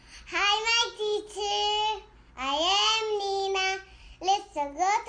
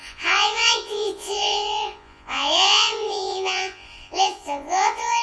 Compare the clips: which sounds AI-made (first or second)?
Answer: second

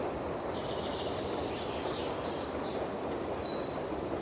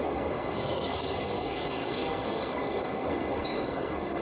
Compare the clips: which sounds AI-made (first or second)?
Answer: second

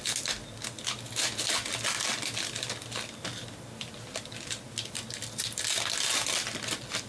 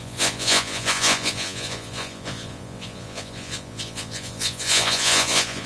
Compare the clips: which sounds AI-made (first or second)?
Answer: second